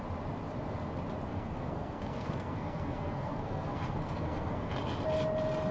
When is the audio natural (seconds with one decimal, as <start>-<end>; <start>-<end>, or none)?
0.0-1.3; 4.7-5.7